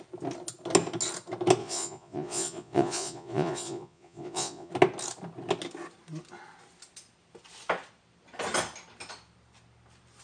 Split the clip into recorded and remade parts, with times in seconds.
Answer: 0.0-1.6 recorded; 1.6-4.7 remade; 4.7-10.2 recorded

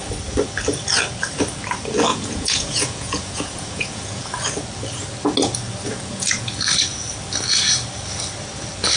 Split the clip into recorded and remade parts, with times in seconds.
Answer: 0.0-2.1 recorded; 2.1-4.2 remade; 4.2-5.9 recorded; 5.9-6.5 remade; 6.5-9.0 recorded